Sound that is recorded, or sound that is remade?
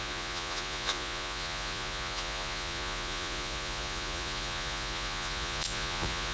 remade